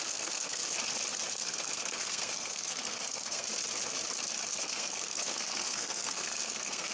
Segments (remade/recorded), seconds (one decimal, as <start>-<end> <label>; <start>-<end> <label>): 0.0-0.6 remade; 0.6-1.3 recorded; 1.3-3.5 remade; 3.5-4.6 recorded; 4.6-6.9 remade